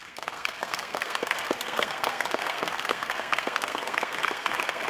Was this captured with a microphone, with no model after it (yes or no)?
no